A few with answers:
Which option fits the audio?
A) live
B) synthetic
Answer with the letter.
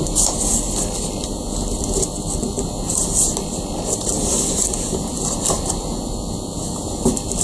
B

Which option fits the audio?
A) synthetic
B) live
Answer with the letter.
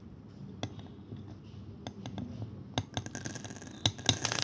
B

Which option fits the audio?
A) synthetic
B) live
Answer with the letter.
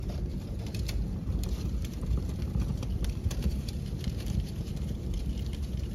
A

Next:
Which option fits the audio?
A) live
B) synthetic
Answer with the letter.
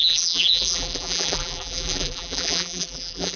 B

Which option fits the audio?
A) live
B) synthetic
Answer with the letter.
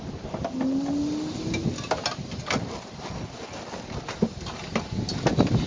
A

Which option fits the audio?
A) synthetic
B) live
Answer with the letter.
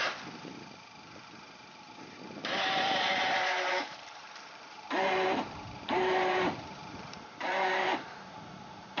A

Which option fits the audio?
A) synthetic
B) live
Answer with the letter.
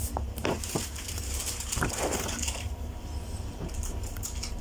A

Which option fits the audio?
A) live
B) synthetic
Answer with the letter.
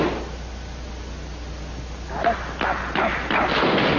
A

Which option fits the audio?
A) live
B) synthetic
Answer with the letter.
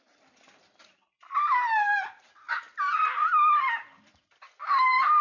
A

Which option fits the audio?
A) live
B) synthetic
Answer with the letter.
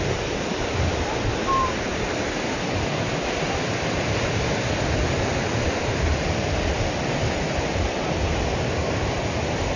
A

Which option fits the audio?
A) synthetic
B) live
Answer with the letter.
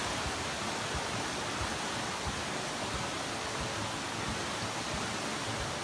B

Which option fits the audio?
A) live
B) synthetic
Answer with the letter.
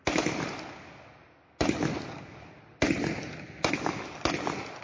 A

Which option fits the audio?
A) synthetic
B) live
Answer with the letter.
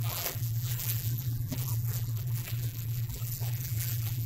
A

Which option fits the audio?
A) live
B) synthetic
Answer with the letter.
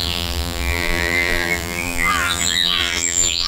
B